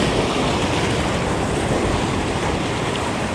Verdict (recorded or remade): recorded